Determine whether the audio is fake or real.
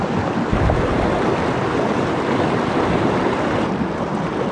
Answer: real